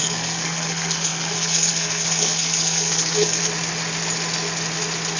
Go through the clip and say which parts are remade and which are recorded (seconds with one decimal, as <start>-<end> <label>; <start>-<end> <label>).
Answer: 0.0-3.4 remade; 3.4-5.2 recorded